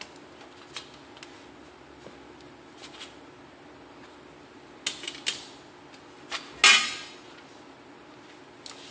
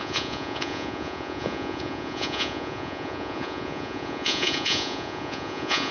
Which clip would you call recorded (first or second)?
first